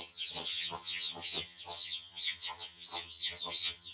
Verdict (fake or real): fake